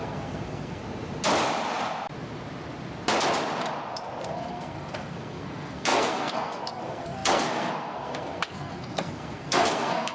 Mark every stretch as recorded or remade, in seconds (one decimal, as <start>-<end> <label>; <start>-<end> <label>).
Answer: 0.0-0.8 remade; 0.8-4.2 recorded; 4.2-10.1 remade